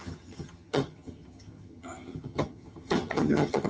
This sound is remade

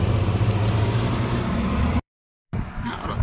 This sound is remade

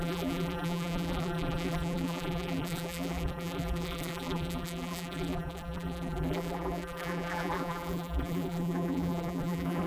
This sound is remade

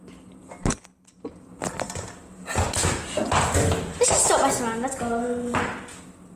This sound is recorded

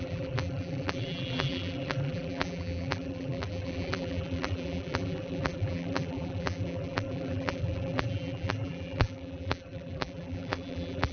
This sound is remade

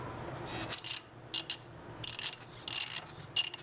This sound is recorded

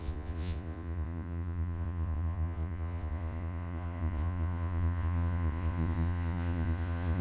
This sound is remade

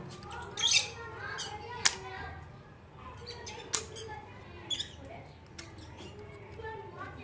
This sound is recorded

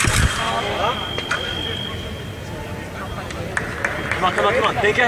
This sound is recorded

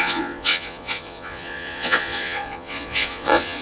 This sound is remade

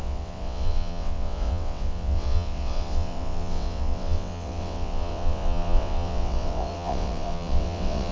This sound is remade